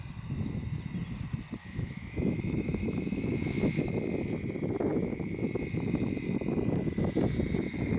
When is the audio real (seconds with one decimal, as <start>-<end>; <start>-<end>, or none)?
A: 0.0-1.6; 4.0-4.9; 5.5-8.0